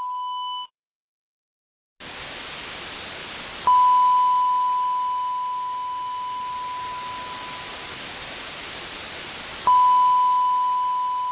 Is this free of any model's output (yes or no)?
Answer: yes